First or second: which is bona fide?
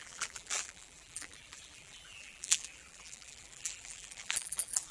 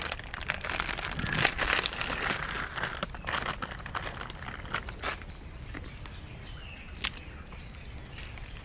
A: second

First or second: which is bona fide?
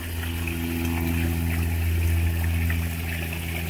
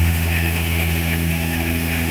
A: first